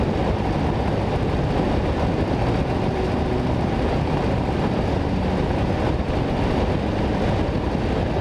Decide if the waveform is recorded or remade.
recorded